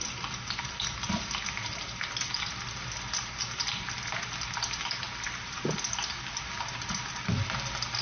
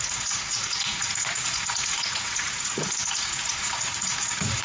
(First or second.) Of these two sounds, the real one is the first